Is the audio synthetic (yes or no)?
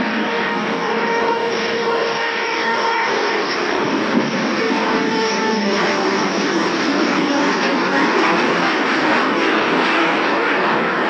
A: yes